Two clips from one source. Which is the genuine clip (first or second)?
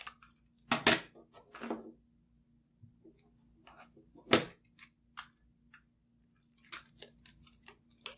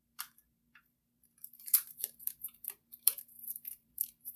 first